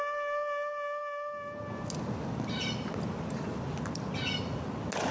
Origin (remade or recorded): recorded